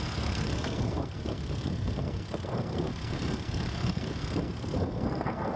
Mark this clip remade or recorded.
remade